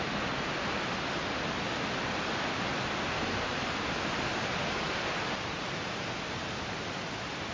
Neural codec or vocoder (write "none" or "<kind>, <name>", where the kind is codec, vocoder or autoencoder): none